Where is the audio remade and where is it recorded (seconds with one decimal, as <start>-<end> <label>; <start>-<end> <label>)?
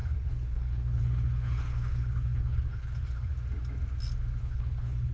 0.0-3.3 remade; 3.3-4.4 recorded; 4.4-5.1 remade